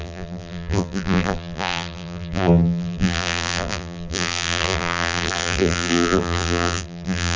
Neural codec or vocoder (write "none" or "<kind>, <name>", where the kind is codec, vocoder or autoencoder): vocoder, BigVGAN v2